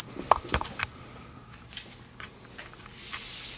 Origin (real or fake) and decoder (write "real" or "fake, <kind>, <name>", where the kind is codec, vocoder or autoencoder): real